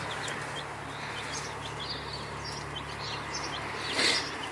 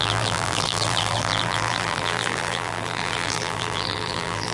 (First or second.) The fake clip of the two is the second